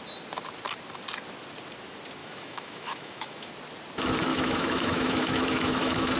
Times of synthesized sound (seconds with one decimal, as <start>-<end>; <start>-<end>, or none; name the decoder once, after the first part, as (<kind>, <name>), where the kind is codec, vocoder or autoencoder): 2.2-3.5 (autoencoder, DAC-VAE); 4.3-6.2